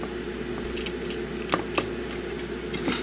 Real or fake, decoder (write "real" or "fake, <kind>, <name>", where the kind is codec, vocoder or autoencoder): real